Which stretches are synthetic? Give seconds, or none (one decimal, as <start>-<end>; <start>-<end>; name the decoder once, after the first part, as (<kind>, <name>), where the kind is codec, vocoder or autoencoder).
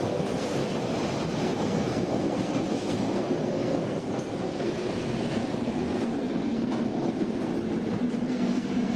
0.0-0.6 (codec, SNAC); 1.4-7.5; 8.1-9.0